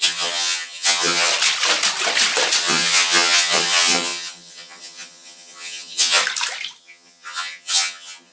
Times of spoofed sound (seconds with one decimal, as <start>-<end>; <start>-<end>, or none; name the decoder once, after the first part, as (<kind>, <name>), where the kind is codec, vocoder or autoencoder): 0.0-1.3 (vocoder, HiFi-GAN); 2.6-6.2; 6.8-8.3